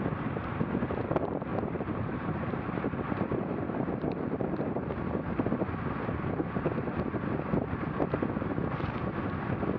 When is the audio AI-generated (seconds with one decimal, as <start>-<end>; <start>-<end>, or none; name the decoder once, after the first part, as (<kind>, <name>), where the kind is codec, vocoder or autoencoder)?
1.5-5.6 (vocoder, BigVGAN v2)